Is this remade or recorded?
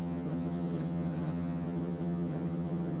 remade